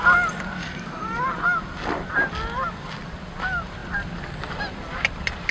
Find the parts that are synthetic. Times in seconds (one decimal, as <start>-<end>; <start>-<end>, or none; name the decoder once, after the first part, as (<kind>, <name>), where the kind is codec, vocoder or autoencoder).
0.6-1.2 (codec, DAC)